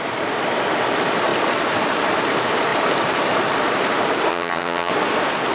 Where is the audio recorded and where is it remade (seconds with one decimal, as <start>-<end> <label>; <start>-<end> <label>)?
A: 0.0-4.3 recorded; 4.3-4.9 remade; 4.9-5.5 recorded